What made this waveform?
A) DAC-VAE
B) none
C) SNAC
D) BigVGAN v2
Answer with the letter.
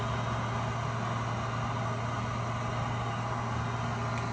B